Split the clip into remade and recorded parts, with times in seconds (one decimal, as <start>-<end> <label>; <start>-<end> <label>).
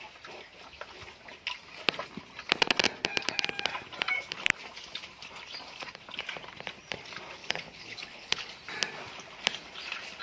0.0-7.4 recorded; 7.4-8.5 remade; 8.5-10.2 recorded